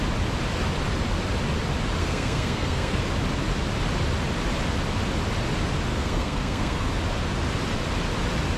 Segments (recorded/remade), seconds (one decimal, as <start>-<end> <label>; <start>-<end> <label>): 0.0-2.0 recorded; 2.0-3.0 remade; 3.0-5.9 recorded; 5.9-6.9 remade; 6.9-8.6 recorded